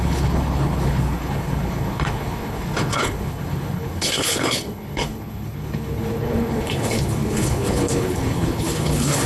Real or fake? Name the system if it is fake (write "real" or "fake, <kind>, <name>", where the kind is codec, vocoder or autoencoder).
fake, codec, HILCodec